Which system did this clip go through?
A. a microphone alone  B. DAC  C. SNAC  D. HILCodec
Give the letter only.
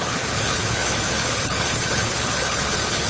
D